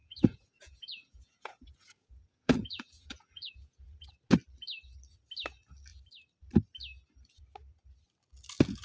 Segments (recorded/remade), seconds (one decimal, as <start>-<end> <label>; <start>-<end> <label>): 0.0-4.1 remade; 4.1-8.8 recorded